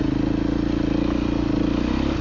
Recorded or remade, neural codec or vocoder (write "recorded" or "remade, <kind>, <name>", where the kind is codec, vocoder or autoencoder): recorded